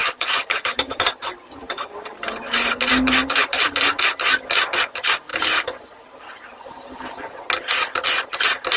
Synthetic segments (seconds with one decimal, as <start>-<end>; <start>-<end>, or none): 0.0-4.0; 5.3-6.7